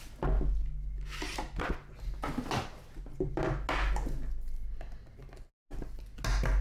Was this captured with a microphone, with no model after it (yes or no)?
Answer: yes